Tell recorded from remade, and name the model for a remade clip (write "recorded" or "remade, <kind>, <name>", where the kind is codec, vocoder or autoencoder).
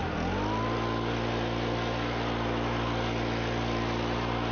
recorded